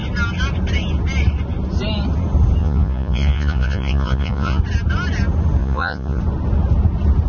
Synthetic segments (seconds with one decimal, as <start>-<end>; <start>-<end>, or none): 2.6-4.6; 5.6-6.2